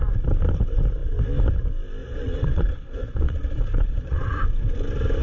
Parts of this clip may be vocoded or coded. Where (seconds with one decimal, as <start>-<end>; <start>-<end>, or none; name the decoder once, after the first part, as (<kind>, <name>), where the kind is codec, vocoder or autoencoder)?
2.0-4.4 (vocoder, Vocos)